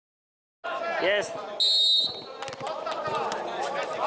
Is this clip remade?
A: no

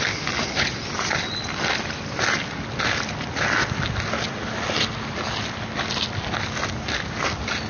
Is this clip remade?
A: no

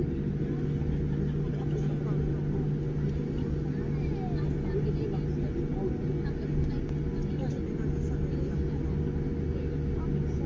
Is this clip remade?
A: no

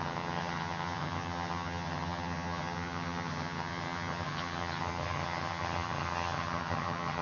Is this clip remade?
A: yes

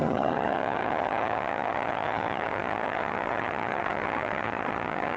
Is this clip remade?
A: yes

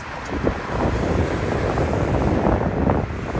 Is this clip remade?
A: no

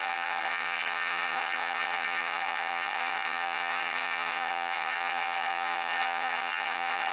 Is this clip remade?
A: yes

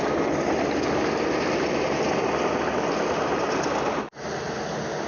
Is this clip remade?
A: no